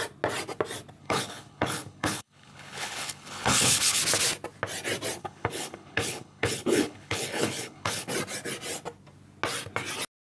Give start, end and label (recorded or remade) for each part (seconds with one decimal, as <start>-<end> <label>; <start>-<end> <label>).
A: 0.0-1.0 recorded; 1.0-4.0 remade; 4.0-5.2 recorded; 5.2-8.1 remade; 8.1-10.4 recorded